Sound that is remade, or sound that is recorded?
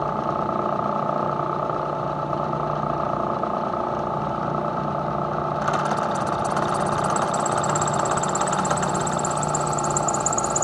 recorded